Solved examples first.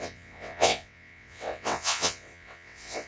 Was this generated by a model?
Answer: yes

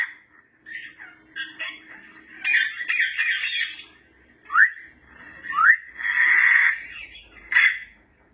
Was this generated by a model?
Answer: no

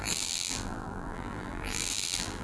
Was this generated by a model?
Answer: yes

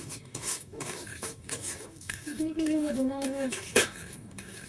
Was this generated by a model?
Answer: yes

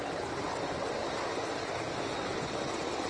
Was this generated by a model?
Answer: no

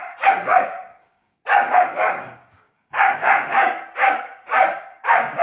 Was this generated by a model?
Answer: yes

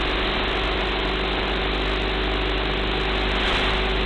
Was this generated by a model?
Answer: no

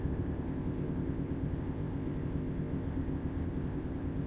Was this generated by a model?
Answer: yes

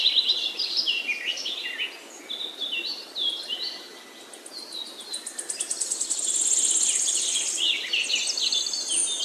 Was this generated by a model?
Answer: no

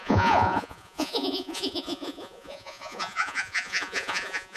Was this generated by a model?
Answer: yes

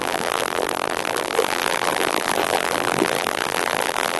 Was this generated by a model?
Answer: yes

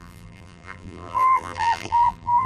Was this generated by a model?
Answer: yes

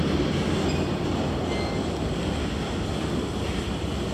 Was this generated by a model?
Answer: no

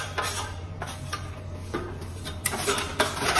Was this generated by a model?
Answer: yes